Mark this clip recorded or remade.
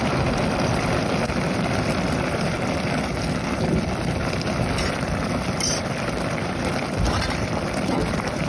remade